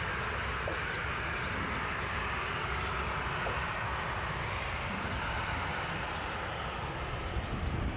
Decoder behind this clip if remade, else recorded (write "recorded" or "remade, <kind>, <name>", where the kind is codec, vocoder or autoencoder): recorded